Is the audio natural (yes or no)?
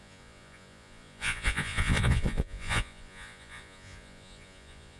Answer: no